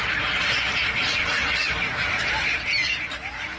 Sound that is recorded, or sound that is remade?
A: recorded